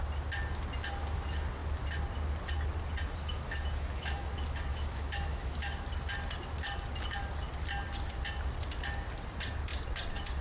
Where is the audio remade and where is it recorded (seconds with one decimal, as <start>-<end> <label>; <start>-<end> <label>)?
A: 0.0-3.2 recorded; 3.2-4.3 remade; 4.3-4.7 recorded; 4.7-5.8 remade; 5.8-10.4 recorded

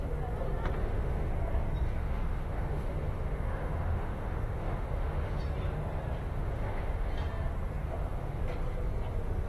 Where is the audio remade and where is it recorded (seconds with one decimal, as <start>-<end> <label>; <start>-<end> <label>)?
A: 0.0-0.8 recorded; 0.8-1.3 remade; 1.3-2.0 recorded; 2.0-5.4 remade; 5.4-6.3 recorded; 6.3-7.1 remade; 7.1-7.8 recorded; 7.8-8.4 remade; 8.4-9.5 recorded